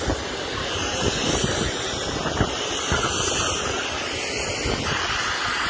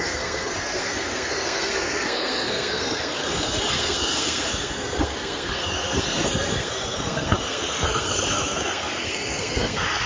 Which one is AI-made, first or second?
second